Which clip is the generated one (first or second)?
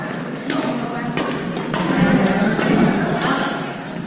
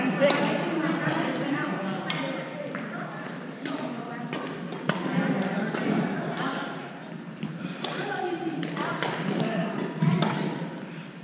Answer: second